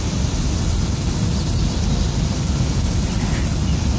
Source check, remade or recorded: remade